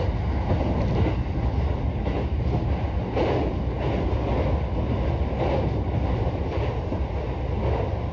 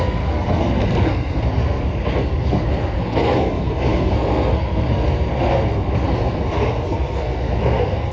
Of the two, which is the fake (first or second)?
second